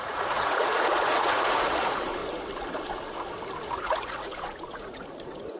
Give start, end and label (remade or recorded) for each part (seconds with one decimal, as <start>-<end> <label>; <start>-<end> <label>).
0.0-2.2 remade; 2.2-3.7 recorded; 3.7-5.6 remade